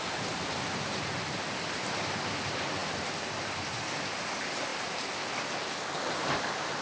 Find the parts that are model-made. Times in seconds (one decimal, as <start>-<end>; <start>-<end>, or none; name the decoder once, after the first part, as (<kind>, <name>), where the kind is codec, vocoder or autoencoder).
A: none